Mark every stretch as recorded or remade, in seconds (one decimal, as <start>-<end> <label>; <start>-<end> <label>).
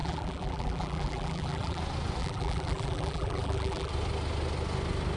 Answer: 0.0-1.8 remade; 1.8-2.2 recorded; 2.2-3.9 remade; 3.9-5.2 recorded